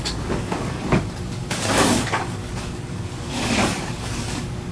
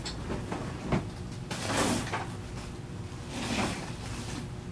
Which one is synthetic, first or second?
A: first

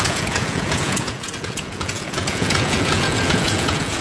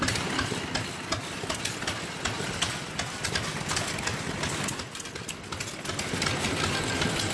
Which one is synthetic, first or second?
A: first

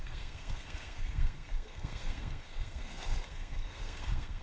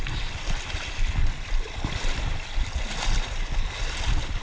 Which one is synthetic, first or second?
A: first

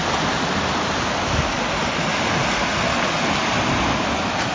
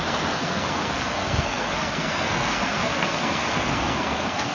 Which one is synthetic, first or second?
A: second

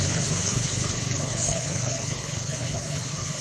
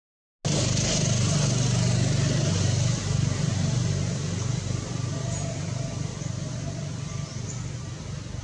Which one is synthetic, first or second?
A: first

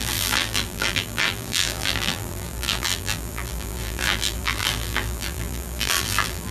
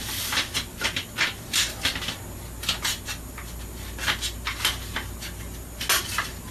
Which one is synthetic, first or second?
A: first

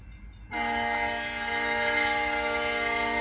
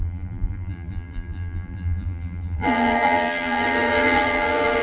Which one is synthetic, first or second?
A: second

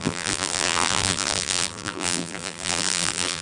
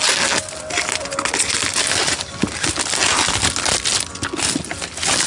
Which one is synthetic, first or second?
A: first